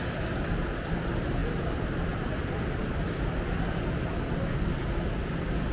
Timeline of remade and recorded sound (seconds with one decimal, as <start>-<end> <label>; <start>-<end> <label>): 0.0-5.7 recorded